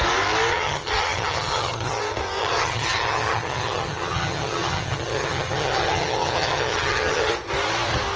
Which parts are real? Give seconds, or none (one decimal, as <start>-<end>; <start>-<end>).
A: 0.0-0.5; 2.0-2.4; 7.3-8.2